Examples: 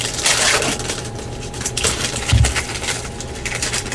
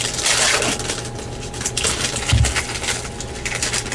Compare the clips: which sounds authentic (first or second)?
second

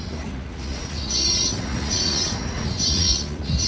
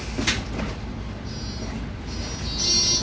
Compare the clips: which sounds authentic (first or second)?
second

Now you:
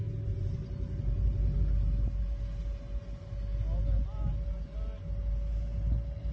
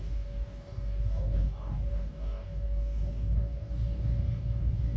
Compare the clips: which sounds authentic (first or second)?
first